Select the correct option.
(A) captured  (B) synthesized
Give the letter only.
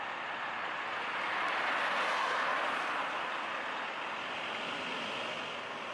A